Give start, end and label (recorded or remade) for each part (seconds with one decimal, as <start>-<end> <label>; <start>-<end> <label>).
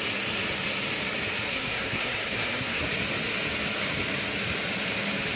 0.0-1.5 recorded; 1.5-2.8 remade; 2.8-5.4 recorded